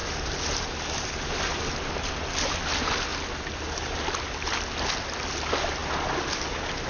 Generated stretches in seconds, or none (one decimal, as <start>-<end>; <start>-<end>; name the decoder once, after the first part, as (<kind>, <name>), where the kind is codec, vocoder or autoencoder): none